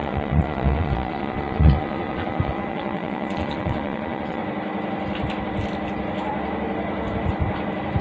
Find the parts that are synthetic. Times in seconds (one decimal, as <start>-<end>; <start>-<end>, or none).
0.0-4.4